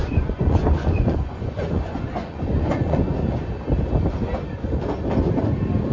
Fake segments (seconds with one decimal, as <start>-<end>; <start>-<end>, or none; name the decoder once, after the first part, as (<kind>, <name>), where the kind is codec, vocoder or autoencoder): 0.0-3.1 (vocoder, Vocos)